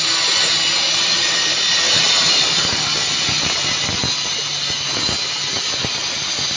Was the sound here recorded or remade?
recorded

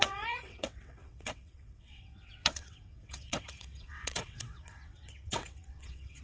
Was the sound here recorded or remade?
remade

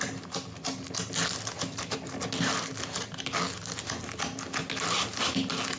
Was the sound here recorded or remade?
recorded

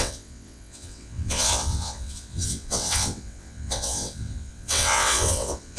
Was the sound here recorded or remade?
remade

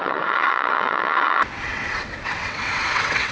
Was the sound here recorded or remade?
remade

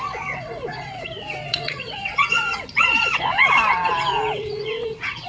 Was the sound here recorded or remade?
remade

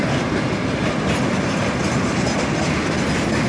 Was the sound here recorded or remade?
recorded